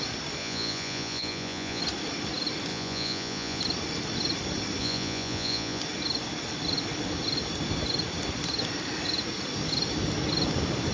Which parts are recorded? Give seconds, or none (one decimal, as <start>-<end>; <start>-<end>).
0.0-0.4; 1.8-2.7; 3.6-4.8; 5.8-10.9